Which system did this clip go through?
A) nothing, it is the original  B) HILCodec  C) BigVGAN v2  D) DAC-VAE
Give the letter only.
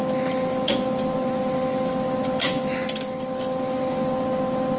A